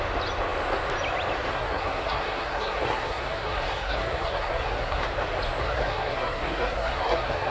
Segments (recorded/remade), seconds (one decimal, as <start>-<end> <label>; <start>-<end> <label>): 0.0-1.5 recorded; 1.5-5.1 remade; 5.1-5.6 recorded; 5.6-7.5 remade